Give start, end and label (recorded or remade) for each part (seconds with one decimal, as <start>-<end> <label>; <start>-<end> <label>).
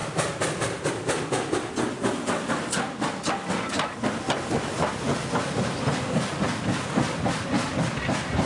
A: 0.0-8.5 recorded